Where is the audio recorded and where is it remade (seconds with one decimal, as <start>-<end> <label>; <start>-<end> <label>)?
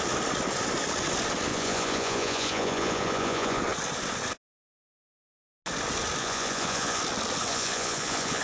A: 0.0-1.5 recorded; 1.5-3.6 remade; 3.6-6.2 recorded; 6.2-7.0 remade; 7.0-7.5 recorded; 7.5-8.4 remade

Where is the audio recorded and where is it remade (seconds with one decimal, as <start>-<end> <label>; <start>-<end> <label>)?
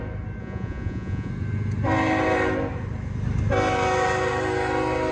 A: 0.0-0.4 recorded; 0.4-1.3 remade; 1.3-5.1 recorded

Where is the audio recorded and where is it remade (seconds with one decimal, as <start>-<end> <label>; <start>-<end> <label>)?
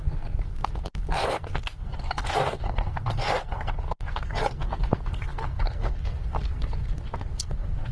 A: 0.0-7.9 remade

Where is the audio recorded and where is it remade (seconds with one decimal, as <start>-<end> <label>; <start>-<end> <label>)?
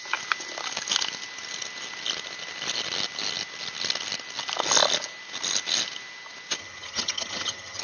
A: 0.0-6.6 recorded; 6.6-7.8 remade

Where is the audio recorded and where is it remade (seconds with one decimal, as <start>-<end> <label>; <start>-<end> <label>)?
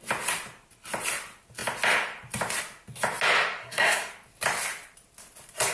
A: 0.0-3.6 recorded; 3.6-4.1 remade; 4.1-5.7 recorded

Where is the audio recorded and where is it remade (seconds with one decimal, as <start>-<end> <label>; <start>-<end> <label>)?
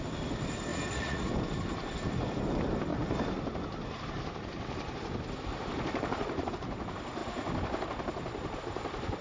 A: 0.0-0.7 recorded; 0.7-1.3 remade; 1.3-9.2 recorded